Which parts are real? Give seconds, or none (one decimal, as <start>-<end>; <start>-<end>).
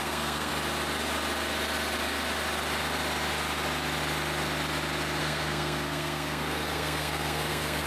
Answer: 0.5-5.2